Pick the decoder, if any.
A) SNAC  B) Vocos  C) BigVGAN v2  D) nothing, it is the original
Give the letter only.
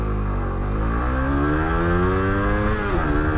D